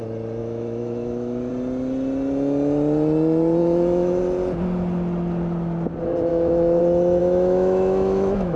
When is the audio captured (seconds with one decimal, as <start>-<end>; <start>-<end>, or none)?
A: 0.0-0.4; 1.5-3.6; 4.2-6.3; 6.8-7.2